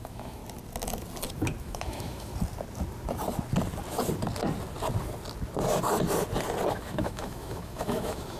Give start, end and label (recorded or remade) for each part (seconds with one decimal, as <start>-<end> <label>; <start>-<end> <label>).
0.0-0.4 remade; 0.4-1.6 recorded; 1.6-2.3 remade; 2.3-6.7 recorded; 6.7-8.4 remade

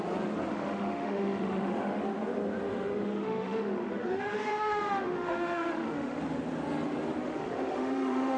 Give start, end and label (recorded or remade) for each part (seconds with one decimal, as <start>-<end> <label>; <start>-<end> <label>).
0.0-0.5 recorded; 0.5-2.0 remade; 2.0-2.7 recorded; 2.7-6.2 remade; 6.2-7.2 recorded; 7.2-8.4 remade